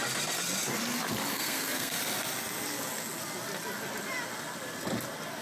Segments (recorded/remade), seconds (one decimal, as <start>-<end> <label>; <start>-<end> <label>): 0.0-1.3 recorded; 1.3-2.0 remade; 2.0-5.4 recorded